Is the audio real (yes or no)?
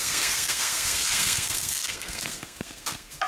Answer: no